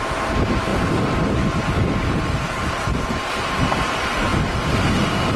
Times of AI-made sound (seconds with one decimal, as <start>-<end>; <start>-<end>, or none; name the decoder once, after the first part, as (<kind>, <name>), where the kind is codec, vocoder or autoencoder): 0.7-3.9 (vocoder, BigVGAN v2)